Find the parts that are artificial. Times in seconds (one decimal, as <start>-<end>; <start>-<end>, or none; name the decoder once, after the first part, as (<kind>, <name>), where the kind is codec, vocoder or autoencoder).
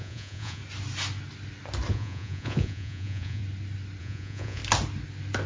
0.0-0.6 (vocoder, Vocos); 1.9-3.4; 4.0-4.6